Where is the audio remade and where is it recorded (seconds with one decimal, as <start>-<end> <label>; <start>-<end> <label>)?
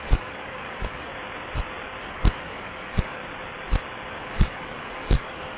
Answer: 0.0-1.1 remade; 1.1-2.0 recorded; 2.0-3.2 remade; 3.2-4.1 recorded; 4.1-5.6 remade